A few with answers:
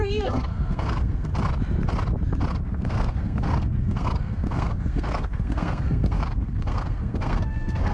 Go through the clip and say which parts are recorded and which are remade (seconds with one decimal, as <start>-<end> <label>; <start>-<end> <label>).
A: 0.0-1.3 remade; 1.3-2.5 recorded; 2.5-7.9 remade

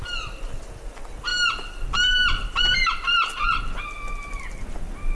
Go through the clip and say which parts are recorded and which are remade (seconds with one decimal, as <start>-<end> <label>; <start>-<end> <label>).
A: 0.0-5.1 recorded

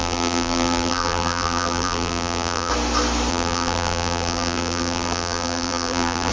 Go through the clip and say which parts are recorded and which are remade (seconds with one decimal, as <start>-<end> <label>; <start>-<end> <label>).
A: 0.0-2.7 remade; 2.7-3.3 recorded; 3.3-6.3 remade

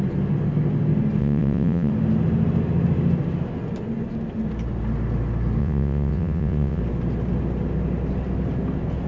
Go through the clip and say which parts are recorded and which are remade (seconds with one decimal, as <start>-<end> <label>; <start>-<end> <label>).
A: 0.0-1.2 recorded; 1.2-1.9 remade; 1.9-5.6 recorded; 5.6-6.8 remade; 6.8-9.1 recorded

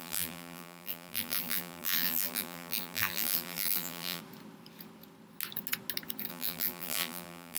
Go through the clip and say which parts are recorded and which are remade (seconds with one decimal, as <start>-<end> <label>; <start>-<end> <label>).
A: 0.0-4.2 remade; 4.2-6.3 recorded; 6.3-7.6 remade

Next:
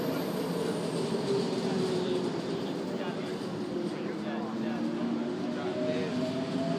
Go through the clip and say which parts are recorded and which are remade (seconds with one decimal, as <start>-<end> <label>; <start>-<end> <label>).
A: 0.0-3.3 recorded; 3.3-3.9 remade; 3.9-6.8 recorded

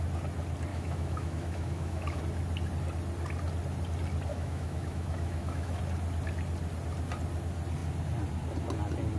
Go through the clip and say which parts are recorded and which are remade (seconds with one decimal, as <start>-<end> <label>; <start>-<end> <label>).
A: 0.0-0.7 recorded; 0.7-2.2 remade; 2.2-4.3 recorded; 4.3-5.8 remade; 5.8-9.2 recorded